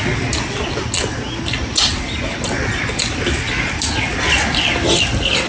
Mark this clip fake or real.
real